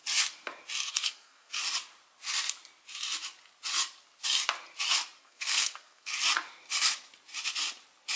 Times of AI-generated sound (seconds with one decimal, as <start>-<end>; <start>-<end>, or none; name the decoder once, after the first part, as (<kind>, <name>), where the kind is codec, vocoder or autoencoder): 0.9-1.6 (codec, SNAC); 5.2-6.1